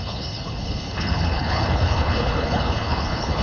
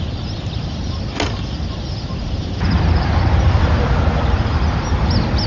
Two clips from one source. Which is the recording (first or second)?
second